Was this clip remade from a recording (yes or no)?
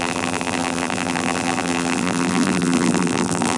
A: yes